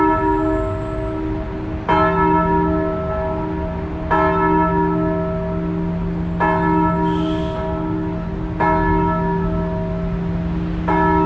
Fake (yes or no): no